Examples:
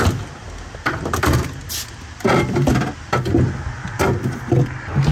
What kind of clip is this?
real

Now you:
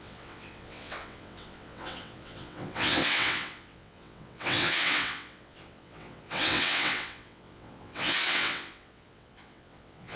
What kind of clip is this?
fake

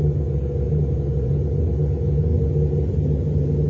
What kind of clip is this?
real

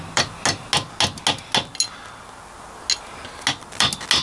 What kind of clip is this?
real